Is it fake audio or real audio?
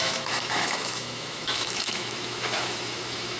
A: fake